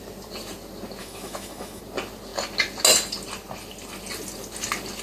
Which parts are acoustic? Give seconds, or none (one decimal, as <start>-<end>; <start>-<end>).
0.0-1.0; 1.8-5.0